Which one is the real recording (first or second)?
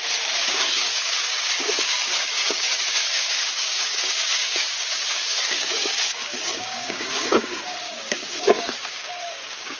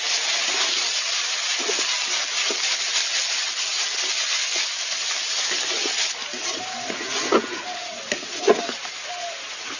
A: second